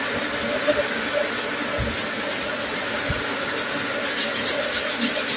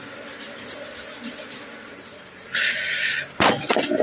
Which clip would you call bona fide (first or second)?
first